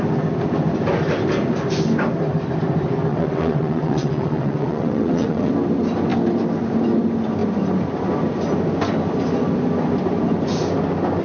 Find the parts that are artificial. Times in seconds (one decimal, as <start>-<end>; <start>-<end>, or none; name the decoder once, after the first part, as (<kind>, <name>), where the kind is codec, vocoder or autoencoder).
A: 3.1-5.5 (vocoder, WaveNeXt)